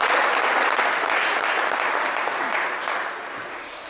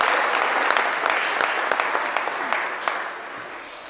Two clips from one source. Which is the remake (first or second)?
first